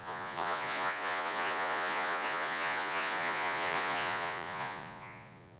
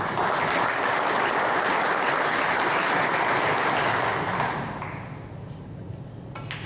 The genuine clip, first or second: second